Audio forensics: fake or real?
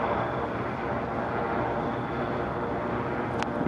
real